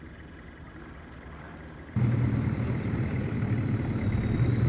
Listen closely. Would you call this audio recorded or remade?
remade